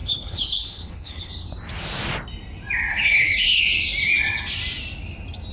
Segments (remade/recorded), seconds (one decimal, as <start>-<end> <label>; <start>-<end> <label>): 0.0-1.3 remade; 1.3-2.9 recorded; 2.9-3.6 remade; 3.6-5.5 recorded